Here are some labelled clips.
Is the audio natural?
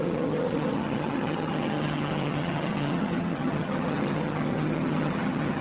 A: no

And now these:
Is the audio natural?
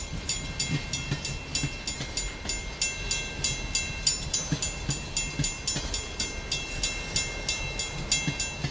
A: yes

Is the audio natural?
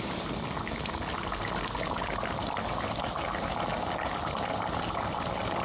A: yes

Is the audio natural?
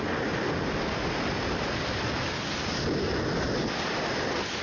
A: yes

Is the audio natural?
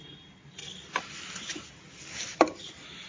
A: yes